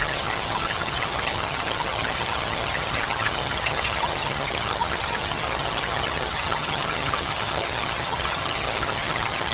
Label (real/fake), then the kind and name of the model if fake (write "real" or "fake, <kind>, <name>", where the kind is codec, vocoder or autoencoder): fake, vocoder, HiFi-GAN